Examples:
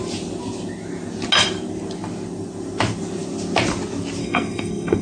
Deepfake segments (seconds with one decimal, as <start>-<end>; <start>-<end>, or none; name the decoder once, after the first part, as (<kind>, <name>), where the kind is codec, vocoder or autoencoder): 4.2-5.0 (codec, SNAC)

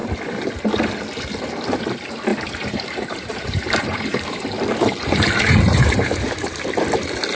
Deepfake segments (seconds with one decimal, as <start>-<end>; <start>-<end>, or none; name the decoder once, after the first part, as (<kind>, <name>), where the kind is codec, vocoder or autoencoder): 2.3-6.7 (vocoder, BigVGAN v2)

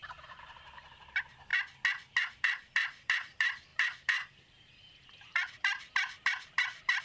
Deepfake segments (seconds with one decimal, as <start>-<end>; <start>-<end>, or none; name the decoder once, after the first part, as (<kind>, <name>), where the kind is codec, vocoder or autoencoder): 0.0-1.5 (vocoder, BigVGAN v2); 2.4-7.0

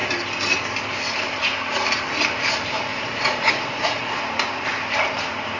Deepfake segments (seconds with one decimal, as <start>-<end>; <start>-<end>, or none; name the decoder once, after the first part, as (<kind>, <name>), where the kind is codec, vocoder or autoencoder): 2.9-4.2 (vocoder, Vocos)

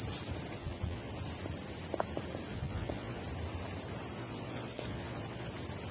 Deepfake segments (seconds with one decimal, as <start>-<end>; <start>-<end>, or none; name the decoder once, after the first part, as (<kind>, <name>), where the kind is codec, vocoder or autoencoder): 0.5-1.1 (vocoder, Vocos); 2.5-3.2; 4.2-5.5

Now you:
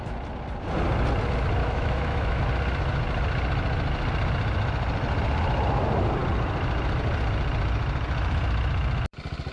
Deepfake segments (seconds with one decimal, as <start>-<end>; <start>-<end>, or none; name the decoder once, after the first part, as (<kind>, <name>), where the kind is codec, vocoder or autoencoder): 1.6-2.4 (autoencoder, DAC-VAE)

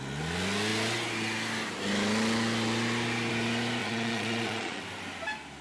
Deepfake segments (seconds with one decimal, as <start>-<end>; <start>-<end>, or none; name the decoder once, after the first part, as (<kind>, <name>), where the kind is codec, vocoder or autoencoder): 3.8-4.8 (vocoder, Vocos)

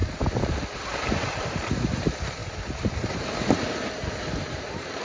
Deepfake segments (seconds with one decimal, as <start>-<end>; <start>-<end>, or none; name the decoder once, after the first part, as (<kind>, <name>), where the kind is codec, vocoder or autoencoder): 0.9-5.0 (vocoder, BigVGAN v2)